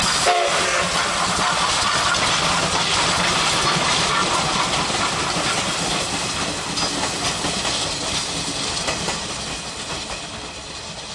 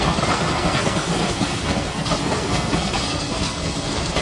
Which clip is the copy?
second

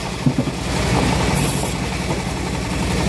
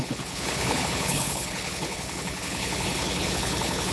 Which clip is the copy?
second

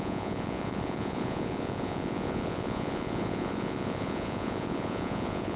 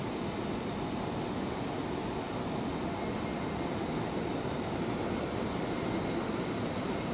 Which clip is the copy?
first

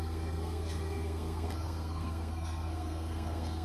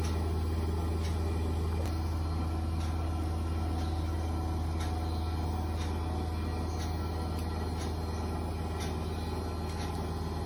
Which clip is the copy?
first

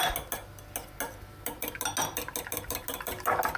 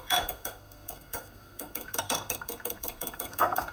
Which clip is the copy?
second